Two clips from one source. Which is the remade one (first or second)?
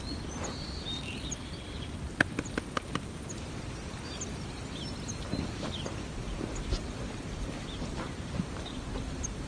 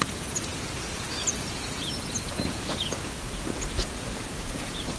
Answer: second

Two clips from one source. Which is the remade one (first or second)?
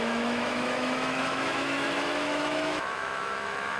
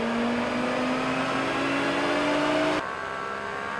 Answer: first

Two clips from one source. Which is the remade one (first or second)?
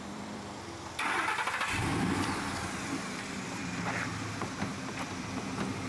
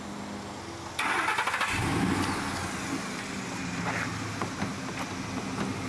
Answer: first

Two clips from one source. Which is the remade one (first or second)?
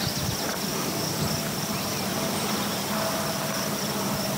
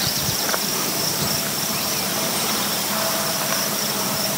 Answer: second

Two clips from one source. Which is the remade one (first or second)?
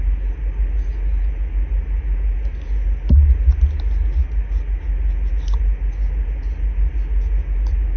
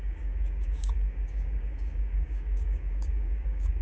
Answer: second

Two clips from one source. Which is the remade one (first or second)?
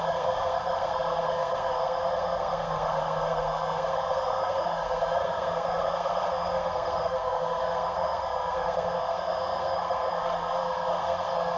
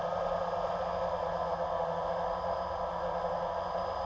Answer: first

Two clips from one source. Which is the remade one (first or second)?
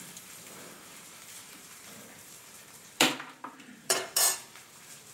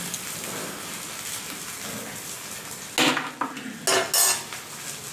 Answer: first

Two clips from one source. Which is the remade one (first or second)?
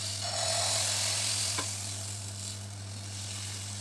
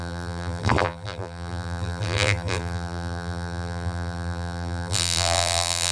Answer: second